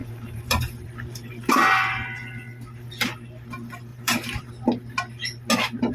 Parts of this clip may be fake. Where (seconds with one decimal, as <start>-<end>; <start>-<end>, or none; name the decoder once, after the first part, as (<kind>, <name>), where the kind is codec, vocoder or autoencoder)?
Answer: 0.0-1.5 (vocoder, BigVGAN v2); 3.9-4.4